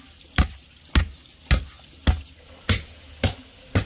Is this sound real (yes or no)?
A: yes